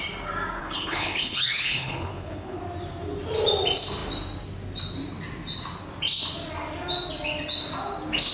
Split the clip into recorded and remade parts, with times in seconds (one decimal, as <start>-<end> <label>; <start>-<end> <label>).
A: 0.0-0.6 recorded; 0.6-2.6 remade; 2.6-8.3 recorded

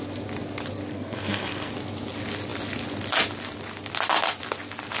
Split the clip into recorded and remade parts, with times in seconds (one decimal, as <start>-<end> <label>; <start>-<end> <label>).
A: 0.0-0.9 recorded; 0.9-1.7 remade; 1.7-5.0 recorded

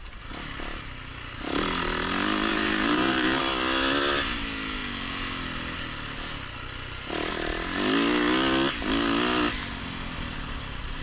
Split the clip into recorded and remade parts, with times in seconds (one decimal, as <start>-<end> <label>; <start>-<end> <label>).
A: 0.0-2.5 recorded; 2.5-3.4 remade; 3.4-11.0 recorded